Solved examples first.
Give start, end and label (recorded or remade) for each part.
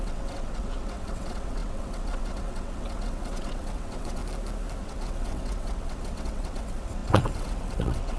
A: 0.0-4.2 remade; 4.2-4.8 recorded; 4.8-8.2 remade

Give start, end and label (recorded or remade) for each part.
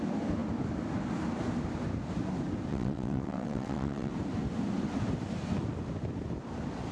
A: 0.0-2.7 recorded; 2.7-4.1 remade; 4.1-6.9 recorded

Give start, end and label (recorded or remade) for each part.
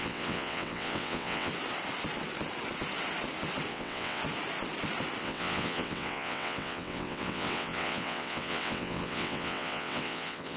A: 0.0-1.5 remade; 1.5-3.7 recorded; 3.7-4.2 remade; 4.2-5.2 recorded; 5.2-10.6 remade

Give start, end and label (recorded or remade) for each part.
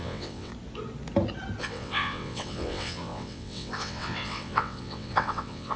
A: 0.0-0.5 remade; 0.5-1.6 recorded; 1.6-5.8 remade